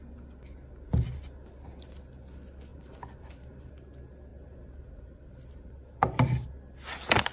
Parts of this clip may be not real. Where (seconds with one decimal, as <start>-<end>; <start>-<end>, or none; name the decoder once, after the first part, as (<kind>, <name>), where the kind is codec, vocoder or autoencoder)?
2.7-3.7 (vocoder, BigVGAN v2); 4.3-6.5